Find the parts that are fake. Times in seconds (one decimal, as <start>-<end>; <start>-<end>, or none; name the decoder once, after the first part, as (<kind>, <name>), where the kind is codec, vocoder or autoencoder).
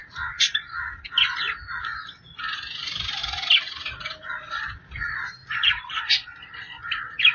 none